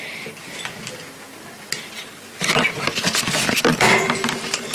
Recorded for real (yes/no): yes